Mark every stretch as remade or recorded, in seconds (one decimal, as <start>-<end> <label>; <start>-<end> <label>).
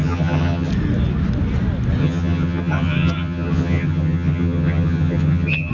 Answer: 0.0-0.7 remade; 0.7-2.0 recorded; 2.0-5.7 remade